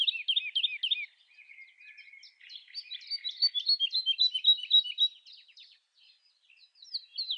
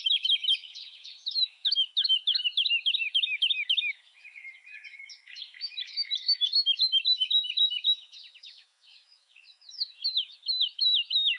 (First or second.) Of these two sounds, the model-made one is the second